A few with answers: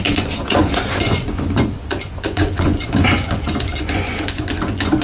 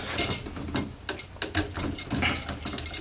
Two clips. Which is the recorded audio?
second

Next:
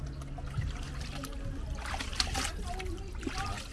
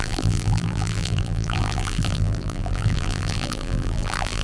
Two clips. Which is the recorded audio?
first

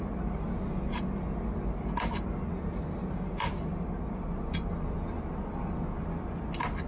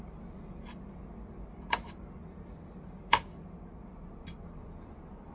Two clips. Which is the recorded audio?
first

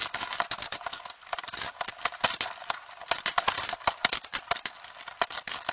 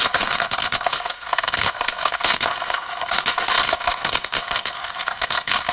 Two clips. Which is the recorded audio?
first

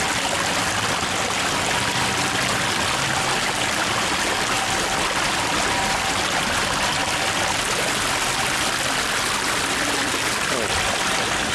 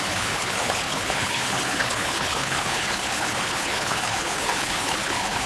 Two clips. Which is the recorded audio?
first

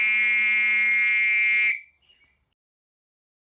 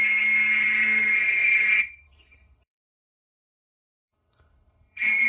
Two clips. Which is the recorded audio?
first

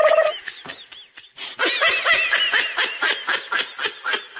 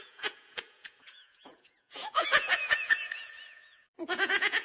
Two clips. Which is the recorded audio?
first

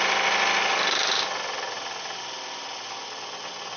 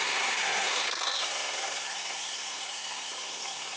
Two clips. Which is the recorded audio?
first